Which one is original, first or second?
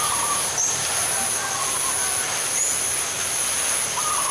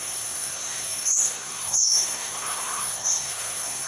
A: first